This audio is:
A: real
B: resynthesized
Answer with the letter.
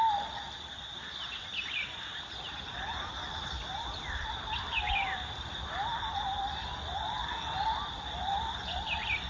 A